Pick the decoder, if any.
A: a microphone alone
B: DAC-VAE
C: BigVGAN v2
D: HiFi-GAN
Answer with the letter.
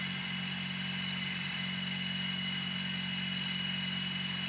A